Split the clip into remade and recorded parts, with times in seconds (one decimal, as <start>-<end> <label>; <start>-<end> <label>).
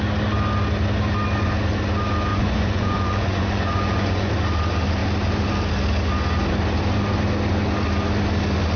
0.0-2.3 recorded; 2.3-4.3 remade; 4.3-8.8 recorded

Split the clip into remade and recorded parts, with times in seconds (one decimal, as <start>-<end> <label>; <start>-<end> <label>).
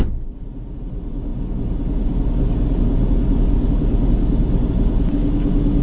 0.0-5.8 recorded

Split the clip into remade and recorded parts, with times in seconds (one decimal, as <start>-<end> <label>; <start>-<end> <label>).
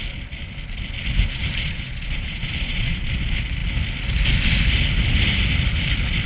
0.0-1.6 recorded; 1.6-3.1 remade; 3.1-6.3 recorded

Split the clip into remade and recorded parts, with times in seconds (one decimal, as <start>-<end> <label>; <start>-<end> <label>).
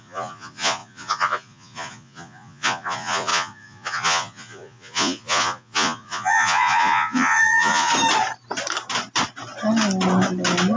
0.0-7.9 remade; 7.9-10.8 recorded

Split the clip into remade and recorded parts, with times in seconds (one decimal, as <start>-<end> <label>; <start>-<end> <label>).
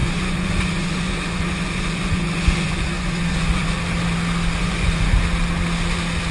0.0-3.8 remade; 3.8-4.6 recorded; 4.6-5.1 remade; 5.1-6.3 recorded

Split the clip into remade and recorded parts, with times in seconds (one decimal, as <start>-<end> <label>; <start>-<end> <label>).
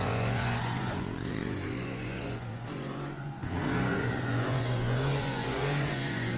0.0-6.4 remade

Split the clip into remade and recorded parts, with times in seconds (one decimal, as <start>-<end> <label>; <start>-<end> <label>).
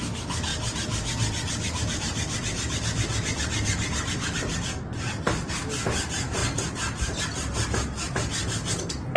0.0-9.2 recorded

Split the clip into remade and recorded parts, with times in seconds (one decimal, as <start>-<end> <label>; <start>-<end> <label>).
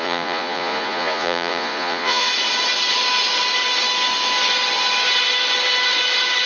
0.0-2.3 remade; 2.3-6.5 recorded